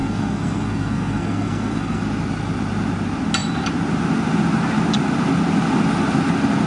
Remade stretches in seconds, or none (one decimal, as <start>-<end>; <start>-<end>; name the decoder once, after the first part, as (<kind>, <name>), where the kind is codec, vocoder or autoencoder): 0.0-2.0 (codec, SNAC)